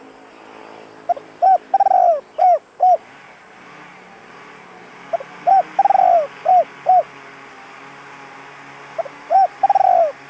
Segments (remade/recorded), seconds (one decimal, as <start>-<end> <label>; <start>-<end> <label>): 0.0-0.6 recorded; 0.6-4.8 remade; 4.8-10.3 recorded